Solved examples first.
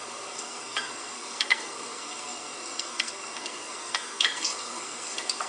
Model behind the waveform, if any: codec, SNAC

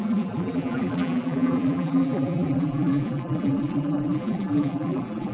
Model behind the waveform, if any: vocoder, BigVGAN v2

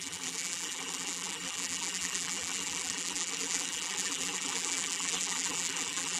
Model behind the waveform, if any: vocoder, BigVGAN v2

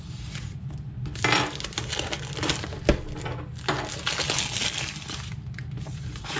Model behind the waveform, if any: none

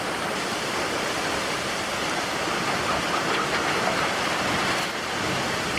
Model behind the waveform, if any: none